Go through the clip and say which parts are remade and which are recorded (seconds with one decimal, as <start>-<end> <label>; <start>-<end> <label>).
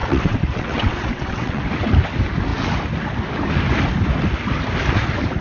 0.0-1.6 remade; 1.6-5.4 recorded